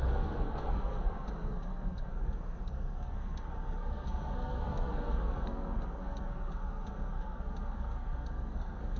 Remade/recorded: remade